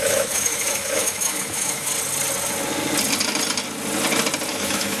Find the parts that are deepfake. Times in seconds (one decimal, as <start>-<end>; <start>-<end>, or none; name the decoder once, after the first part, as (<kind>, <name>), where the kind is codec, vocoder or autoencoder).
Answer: 0.0-1.9 (autoencoder, DAC-VAE); 4.5-5.0